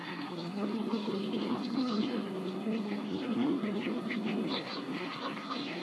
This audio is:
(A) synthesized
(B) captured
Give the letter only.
A